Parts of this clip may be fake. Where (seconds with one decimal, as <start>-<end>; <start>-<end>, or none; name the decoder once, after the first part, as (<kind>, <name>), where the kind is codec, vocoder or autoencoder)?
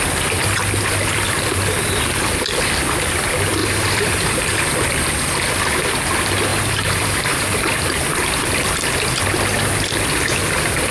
3.6-4.6 (vocoder, BigVGAN v2); 6.5-8.0